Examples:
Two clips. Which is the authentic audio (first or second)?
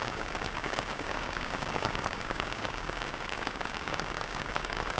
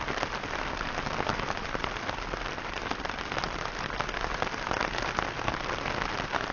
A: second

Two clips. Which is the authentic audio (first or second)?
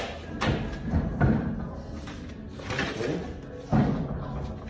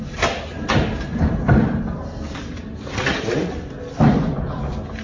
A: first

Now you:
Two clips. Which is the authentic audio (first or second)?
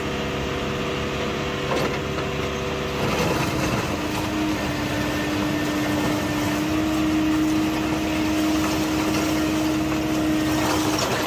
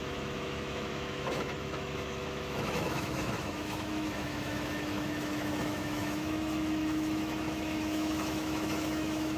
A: first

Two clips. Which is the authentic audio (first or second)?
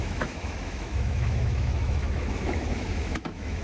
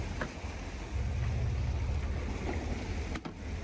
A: second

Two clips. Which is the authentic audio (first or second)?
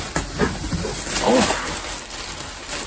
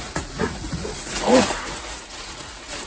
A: first